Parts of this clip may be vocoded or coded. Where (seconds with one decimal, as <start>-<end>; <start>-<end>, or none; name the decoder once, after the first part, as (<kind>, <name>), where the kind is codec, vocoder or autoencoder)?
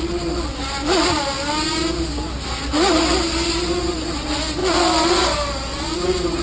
none